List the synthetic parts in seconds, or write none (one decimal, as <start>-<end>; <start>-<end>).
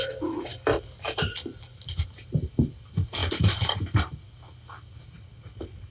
0.5-2.0; 3.2-3.8